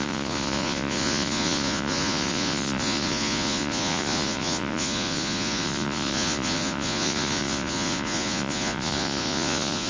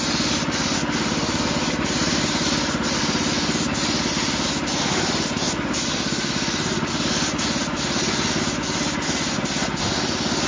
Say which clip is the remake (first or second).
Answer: first